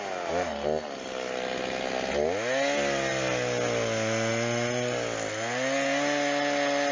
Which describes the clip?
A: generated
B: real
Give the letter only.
B